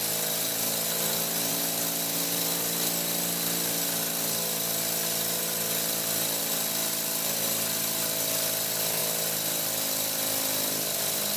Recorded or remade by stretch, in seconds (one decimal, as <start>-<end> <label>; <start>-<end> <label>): 0.0-11.4 recorded